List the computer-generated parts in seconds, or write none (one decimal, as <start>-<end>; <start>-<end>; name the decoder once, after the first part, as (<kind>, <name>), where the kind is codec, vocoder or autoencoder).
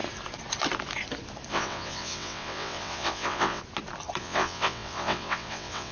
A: 1.5-3.6 (vocoder, WaveNeXt); 4.2-5.9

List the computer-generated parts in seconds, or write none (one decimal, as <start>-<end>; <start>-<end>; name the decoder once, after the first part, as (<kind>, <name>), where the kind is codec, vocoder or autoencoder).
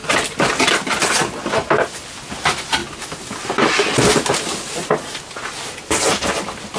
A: 0.0-0.5 (vocoder, BigVGAN v2); 2.8-5.2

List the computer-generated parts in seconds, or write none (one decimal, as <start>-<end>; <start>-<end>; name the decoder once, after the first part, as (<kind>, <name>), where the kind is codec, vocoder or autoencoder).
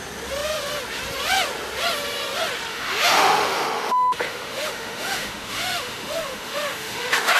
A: 2.7-7.4 (autoencoder, DAC-VAE)